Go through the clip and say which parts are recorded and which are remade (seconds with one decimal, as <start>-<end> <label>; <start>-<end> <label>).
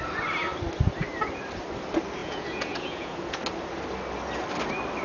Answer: 0.0-2.2 recorded; 2.2-3.4 remade; 3.4-5.0 recorded